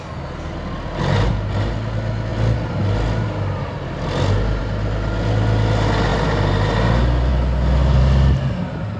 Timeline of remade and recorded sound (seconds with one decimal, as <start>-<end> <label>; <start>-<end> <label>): 0.0-9.0 recorded